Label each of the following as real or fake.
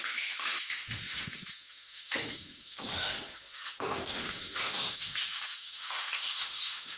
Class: fake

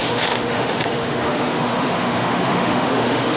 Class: fake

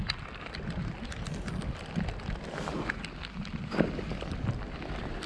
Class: real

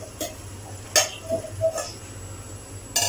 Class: real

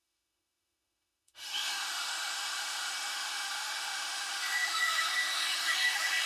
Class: fake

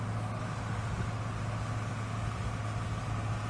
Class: real